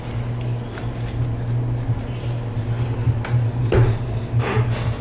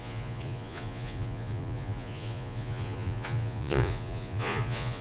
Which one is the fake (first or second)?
second